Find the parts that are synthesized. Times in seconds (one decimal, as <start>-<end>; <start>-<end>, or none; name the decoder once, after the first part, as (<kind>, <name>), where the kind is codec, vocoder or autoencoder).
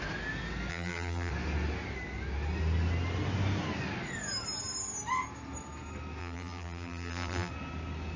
0.7-1.3 (vocoder, BigVGAN v2); 6.2-7.5